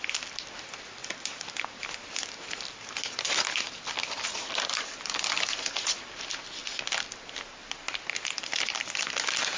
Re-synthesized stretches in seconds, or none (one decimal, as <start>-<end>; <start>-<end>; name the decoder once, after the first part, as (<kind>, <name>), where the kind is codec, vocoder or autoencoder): none